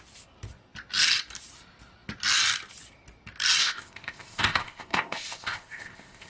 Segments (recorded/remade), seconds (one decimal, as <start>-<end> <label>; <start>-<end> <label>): 0.0-3.6 recorded; 3.6-6.3 remade